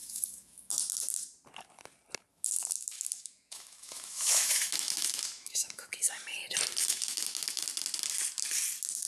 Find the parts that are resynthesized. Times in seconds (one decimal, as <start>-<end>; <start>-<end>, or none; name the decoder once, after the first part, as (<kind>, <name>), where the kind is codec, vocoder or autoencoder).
0.0-0.8 (autoencoder, DAC-VAE); 2.3-6.0; 6.8-7.6

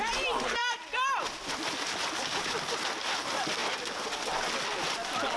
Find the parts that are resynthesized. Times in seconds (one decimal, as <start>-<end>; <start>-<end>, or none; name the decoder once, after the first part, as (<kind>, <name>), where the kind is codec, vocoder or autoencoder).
none

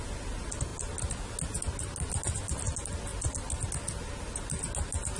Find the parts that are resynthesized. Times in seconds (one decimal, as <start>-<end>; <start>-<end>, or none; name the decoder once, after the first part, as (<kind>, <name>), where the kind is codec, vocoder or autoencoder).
none

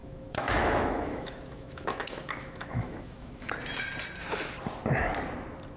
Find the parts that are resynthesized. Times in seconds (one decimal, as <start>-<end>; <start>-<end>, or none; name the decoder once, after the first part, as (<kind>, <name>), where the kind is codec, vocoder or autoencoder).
0.0-3.5 (autoencoder, DAC-VAE)

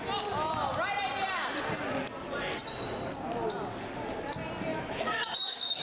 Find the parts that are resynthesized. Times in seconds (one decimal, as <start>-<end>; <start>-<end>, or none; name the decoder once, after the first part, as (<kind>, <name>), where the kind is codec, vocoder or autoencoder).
4.7-5.8 (autoencoder, DAC-VAE)